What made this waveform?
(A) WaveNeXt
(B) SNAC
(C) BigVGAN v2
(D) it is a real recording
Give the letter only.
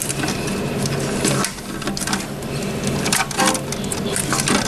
D